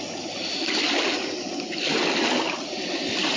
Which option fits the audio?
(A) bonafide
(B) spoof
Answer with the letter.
A